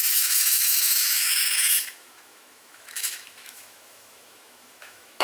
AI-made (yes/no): yes